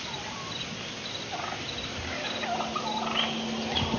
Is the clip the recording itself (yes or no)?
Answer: yes